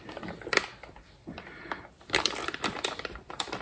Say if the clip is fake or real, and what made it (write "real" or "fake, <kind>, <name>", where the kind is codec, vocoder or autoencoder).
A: real